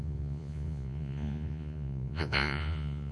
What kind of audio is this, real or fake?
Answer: fake